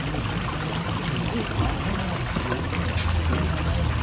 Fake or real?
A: real